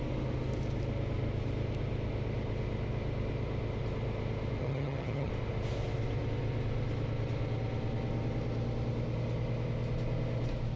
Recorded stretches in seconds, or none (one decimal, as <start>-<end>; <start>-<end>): 0.0-4.6; 5.3-10.8